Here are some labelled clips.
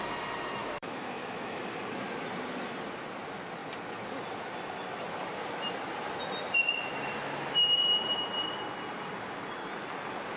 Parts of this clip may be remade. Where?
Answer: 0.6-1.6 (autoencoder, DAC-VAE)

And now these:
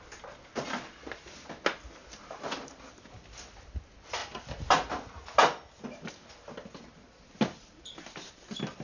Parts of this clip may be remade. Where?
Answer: 2.0-2.8 (vocoder, BigVGAN v2)

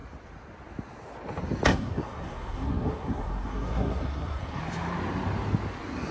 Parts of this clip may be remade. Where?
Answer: 1.7-4.6 (codec, SNAC)

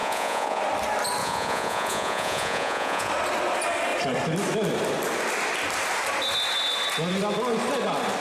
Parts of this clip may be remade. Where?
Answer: 0.0-0.6 (vocoder, Vocos); 1.2-3.1

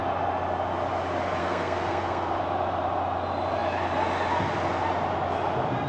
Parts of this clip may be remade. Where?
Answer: 1.4-2.4 (codec, SNAC)